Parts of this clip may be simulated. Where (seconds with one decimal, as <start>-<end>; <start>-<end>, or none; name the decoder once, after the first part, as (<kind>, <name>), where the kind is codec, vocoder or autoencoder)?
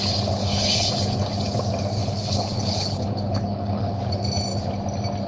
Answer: 0.4-0.9 (codec, HILCodec); 2.0-4.0